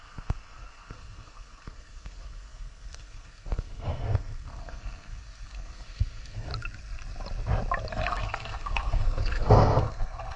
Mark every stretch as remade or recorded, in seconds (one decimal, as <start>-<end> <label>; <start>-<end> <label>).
0.0-6.5 remade; 6.5-7.9 recorded; 7.9-10.4 remade